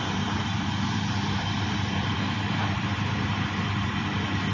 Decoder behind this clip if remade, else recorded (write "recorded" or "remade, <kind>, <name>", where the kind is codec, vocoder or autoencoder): remade, vocoder, BigVGAN v2